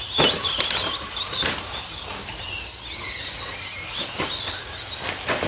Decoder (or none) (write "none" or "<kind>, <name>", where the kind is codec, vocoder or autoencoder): none